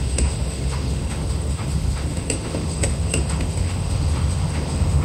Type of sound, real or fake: fake